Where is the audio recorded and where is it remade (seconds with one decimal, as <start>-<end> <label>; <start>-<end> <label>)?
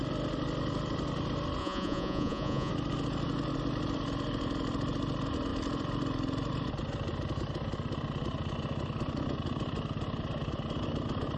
0.0-1.6 recorded; 1.6-2.7 remade; 2.7-11.4 recorded